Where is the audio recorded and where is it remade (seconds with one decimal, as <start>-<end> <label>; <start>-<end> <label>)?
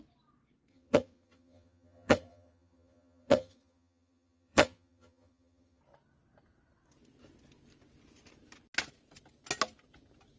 0.0-0.7 recorded; 0.7-5.8 remade; 5.8-10.4 recorded